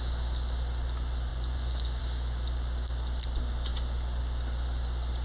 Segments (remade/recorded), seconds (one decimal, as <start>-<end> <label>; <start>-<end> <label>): 0.0-1.3 recorded; 1.3-2.0 remade; 2.0-5.2 recorded